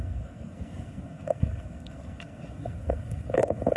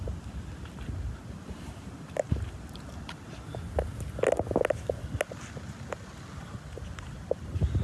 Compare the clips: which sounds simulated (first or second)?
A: first